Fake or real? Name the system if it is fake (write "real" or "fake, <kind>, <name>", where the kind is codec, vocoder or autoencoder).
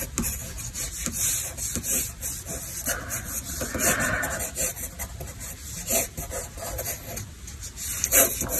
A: real